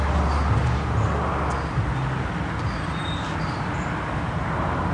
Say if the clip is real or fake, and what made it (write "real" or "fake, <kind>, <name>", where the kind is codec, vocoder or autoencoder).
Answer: real